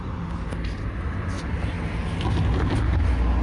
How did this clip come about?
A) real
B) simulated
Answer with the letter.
A